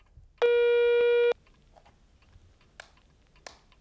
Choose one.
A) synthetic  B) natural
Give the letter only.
B